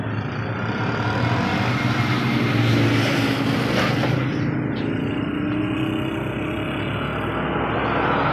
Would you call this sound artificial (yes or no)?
no